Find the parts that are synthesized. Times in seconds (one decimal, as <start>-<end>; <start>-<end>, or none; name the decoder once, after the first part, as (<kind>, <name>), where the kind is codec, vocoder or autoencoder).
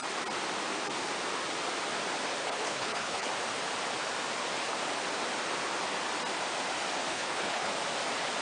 2.4-3.3 (codec, HILCodec); 7.1-7.7